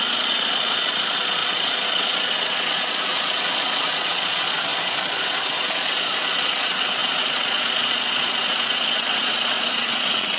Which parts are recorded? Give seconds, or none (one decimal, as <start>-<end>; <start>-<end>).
none